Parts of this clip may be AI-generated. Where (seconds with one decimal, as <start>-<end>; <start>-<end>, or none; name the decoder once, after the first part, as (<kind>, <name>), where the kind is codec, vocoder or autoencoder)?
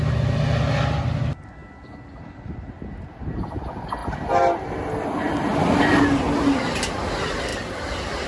none